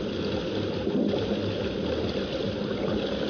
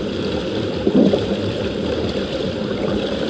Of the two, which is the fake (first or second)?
second